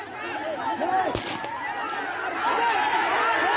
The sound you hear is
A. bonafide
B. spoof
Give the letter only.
A